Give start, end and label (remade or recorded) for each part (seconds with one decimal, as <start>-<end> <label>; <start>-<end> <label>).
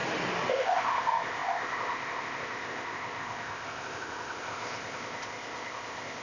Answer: 0.0-0.5 recorded; 0.5-6.2 remade